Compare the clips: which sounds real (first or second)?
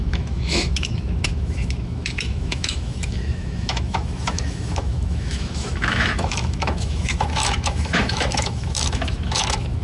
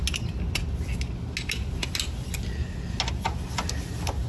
second